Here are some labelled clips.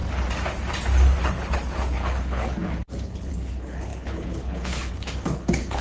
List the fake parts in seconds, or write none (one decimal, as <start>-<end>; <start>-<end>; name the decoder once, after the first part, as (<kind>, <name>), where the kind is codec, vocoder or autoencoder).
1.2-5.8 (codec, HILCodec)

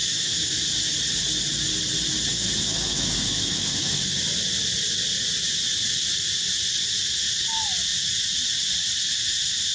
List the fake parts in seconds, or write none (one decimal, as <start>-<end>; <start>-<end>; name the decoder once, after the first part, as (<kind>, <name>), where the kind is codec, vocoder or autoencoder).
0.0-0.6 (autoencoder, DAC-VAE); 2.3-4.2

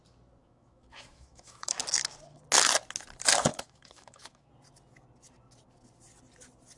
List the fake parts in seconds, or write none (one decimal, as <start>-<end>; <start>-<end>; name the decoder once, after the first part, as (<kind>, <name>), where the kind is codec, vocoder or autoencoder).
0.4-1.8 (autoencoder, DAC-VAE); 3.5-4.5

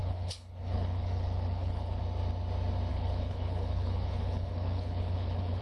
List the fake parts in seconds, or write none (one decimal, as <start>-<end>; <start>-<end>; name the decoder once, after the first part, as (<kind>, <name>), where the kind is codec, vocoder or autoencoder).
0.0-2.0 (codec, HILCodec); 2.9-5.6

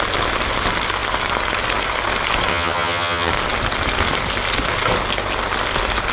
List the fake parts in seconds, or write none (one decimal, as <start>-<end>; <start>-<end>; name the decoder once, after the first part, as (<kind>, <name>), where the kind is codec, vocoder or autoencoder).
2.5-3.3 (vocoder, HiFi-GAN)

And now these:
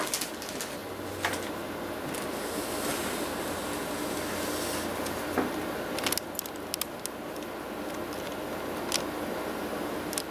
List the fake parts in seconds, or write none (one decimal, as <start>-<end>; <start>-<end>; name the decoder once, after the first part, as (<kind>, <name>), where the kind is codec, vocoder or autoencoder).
none

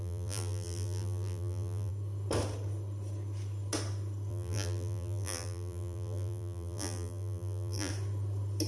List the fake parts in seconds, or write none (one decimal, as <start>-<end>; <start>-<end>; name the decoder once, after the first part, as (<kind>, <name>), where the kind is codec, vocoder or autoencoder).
0.0-1.9 (vocoder, BigVGAN v2); 4.3-7.9